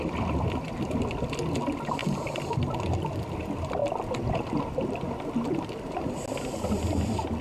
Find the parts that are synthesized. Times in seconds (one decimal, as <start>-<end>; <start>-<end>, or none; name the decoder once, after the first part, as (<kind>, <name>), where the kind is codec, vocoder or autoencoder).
none